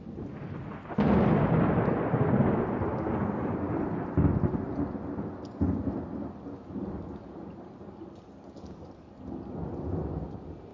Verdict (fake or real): real